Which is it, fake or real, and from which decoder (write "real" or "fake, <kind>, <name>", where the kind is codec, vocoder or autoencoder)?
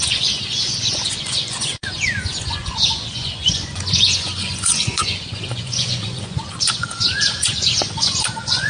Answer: fake, vocoder, Vocos